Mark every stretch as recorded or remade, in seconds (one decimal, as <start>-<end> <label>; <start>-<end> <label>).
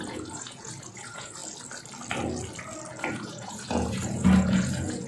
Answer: 0.0-1.4 remade; 1.4-3.1 recorded; 3.1-5.1 remade